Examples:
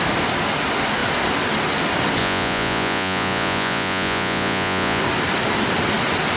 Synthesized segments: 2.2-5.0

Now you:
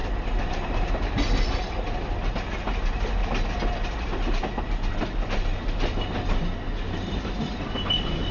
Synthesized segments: none

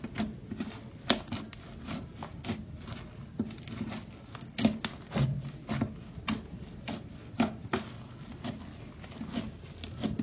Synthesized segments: none

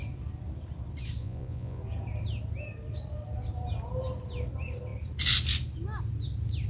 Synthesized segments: 1.2-1.8

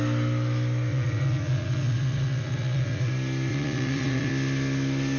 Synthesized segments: 0.9-3.1; 3.5-4.3

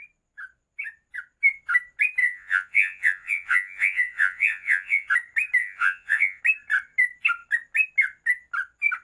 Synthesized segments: 2.2-5.1; 5.6-6.4

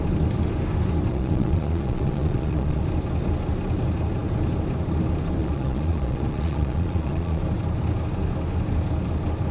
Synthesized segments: 1.1-2.8; 5.4-7.4

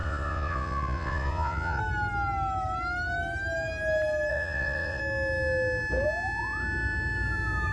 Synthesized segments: 0.0-1.8; 4.3-5.0